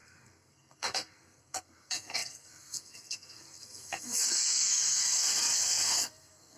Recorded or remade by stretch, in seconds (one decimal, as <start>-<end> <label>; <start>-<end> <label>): 0.0-6.6 remade